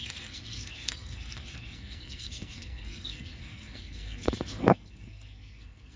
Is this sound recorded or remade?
remade